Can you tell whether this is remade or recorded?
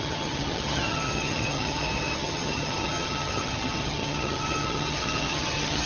remade